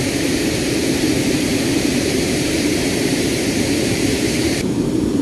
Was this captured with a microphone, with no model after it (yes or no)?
no